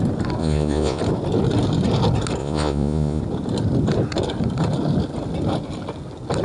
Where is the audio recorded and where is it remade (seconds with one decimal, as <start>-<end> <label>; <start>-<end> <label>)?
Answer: 0.0-0.4 recorded; 0.4-1.0 remade; 1.0-2.4 recorded; 2.4-3.2 remade; 3.2-6.4 recorded